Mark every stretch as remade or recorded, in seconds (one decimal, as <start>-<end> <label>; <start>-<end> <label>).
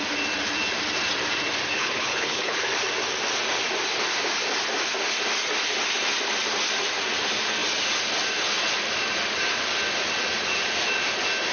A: 0.0-1.7 recorded; 1.7-2.6 remade; 2.6-11.5 recorded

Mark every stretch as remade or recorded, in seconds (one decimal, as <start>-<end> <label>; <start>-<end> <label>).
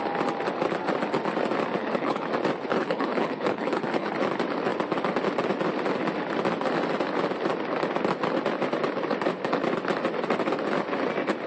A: 0.0-1.8 recorded; 1.8-2.3 remade; 2.3-2.7 recorded; 2.7-4.1 remade; 4.1-11.5 recorded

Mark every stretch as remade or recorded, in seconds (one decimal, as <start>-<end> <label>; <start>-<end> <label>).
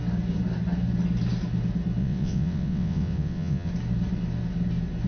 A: 0.0-2.0 recorded; 2.0-3.7 remade; 3.7-5.1 recorded